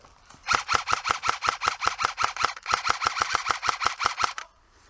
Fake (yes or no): no